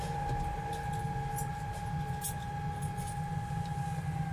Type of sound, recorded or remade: recorded